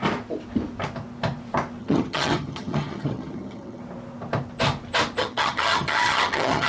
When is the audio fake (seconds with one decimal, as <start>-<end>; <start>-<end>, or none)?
1.8-3.8; 5.2-6.7